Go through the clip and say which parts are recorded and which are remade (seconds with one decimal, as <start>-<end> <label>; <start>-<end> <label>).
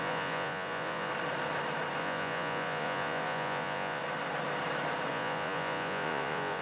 0.0-1.1 remade; 1.1-2.0 recorded; 2.0-4.0 remade; 4.0-5.1 recorded; 5.1-6.6 remade